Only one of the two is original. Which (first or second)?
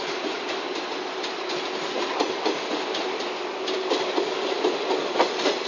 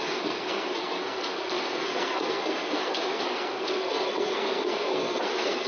first